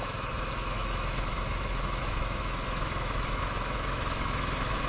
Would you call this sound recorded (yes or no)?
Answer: no